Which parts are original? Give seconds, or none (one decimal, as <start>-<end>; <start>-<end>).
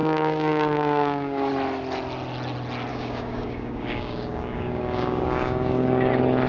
1.5-2.9; 6.1-6.5